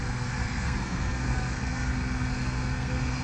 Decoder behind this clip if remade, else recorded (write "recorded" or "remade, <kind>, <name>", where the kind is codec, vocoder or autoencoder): remade, codec, SNAC